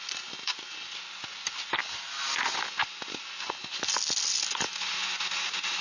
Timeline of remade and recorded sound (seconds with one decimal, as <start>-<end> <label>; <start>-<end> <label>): 0.0-5.8 recorded